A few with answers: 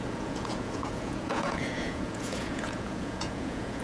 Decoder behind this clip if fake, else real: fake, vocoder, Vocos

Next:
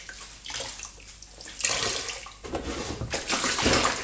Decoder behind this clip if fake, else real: real